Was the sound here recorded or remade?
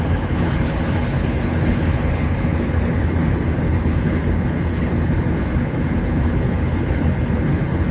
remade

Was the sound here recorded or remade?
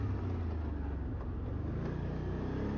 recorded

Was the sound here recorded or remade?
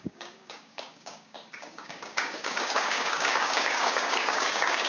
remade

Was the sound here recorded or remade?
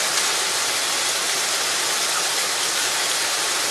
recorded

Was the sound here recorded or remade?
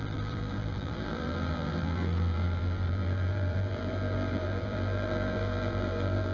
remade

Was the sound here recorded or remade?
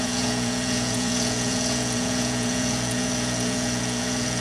remade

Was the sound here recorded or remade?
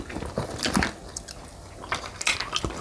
recorded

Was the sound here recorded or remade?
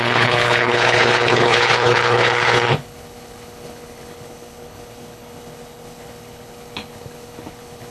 remade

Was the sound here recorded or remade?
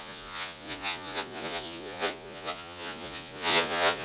remade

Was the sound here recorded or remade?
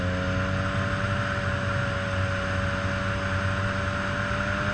recorded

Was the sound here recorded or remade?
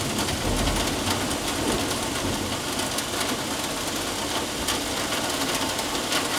recorded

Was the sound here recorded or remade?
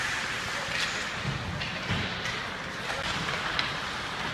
recorded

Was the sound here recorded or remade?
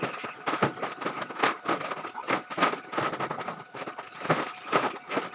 recorded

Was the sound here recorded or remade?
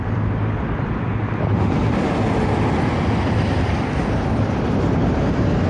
remade